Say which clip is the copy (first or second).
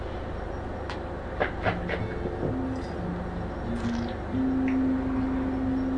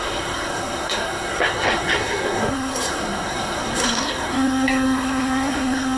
second